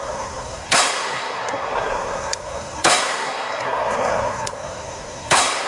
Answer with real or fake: fake